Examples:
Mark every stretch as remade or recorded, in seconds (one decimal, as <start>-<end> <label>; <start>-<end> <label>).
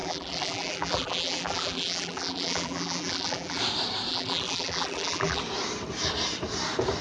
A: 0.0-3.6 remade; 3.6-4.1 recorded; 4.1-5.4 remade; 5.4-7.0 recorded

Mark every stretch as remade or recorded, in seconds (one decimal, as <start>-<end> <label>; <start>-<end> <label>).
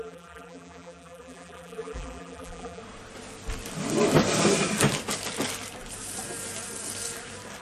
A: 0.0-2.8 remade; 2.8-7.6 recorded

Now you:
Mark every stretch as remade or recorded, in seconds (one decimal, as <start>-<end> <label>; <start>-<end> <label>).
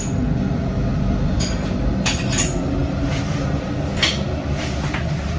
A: 0.0-0.9 recorded; 0.9-1.8 remade; 1.8-2.8 recorded; 2.8-3.7 remade; 3.7-5.4 recorded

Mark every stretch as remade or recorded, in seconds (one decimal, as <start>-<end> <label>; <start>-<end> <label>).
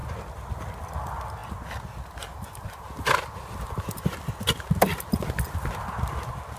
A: 0.0-2.3 recorded; 2.3-4.1 remade; 4.1-6.6 recorded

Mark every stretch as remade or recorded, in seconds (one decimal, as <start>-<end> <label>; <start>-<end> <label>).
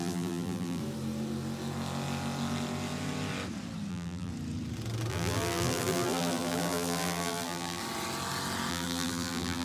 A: 0.0-0.8 remade; 0.8-3.9 recorded; 3.9-4.3 remade; 4.3-5.1 recorded; 5.1-7.8 remade; 7.8-8.7 recorded; 8.7-9.6 remade